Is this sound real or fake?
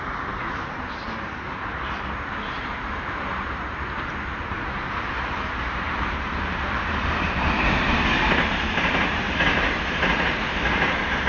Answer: fake